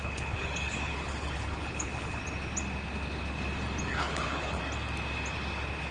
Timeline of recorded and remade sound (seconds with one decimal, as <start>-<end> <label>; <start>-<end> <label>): 0.0-2.2 remade; 2.2-3.9 recorded; 3.9-4.6 remade; 4.6-5.9 recorded